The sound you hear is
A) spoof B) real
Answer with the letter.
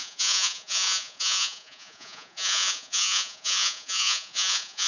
A